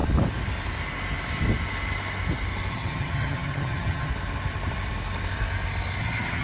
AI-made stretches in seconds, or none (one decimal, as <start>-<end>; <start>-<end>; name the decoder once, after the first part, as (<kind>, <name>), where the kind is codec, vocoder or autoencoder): 2.7-4.1 (vocoder, HiFi-GAN); 6.0-6.4